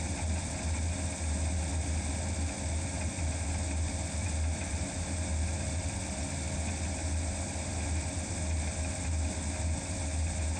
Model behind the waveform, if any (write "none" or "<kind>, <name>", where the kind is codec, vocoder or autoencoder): none